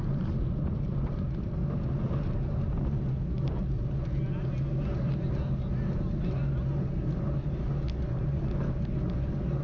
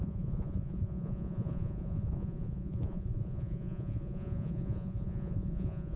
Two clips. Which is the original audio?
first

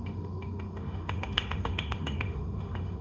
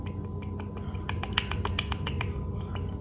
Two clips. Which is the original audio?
second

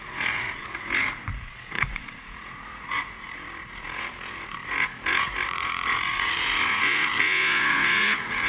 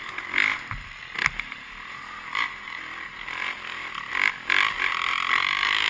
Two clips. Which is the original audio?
second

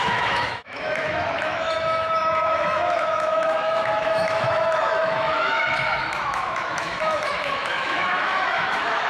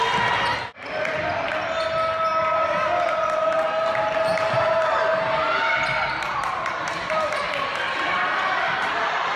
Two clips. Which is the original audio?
second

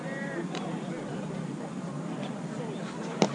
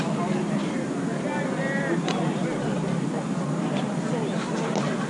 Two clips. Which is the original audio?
second